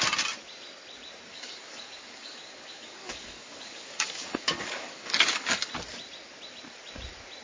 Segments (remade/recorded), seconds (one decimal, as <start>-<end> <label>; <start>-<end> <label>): 0.0-1.3 recorded; 1.3-5.7 remade; 5.7-7.4 recorded